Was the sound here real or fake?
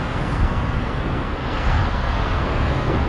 fake